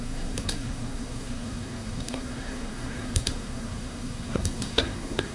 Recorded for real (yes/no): no